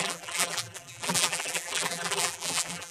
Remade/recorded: remade